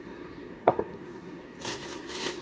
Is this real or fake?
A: fake